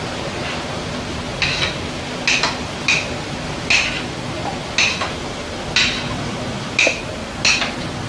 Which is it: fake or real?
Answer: real